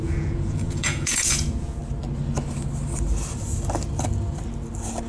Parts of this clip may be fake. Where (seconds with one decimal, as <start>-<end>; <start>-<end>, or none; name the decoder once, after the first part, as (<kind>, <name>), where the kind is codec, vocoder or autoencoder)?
0.0-1.8 (vocoder, Vocos)